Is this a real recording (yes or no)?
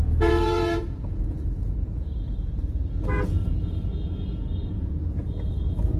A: no